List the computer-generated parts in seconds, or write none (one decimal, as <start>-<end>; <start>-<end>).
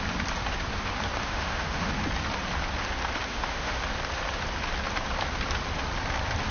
1.2-1.9; 3.3-3.8